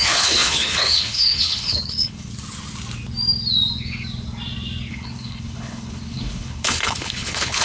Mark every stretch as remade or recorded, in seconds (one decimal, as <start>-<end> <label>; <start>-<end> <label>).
0.0-2.3 remade; 2.3-4.9 recorded; 4.9-7.6 remade